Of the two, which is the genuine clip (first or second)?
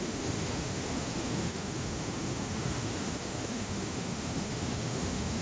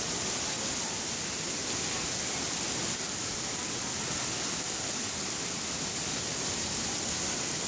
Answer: second